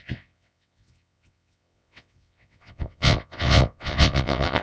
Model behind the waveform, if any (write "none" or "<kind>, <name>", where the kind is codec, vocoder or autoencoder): vocoder, WaveNeXt